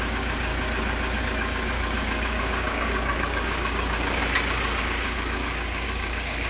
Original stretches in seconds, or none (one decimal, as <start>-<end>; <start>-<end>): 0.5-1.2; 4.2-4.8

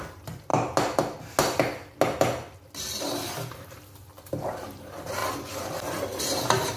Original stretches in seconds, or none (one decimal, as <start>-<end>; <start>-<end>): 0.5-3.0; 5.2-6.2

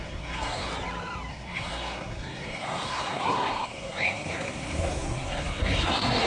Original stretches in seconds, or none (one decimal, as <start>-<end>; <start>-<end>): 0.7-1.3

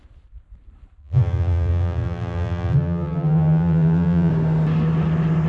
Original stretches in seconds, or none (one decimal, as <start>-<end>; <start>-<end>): 0.0-1.0; 4.3-5.5

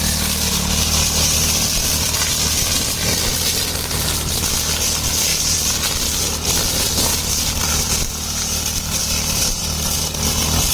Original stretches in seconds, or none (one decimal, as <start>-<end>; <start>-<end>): 0.0-1.8; 3.1-5.3; 6.2-7.1; 8.1-9.0; 9.6-10.7

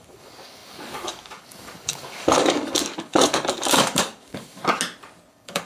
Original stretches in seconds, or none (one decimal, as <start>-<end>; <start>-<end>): 4.6-5.3

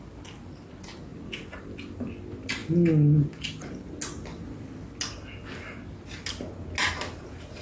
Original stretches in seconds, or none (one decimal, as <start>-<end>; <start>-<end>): 0.0-7.6